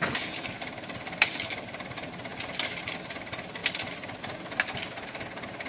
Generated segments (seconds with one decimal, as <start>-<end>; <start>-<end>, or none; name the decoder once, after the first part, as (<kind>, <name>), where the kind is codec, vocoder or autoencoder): none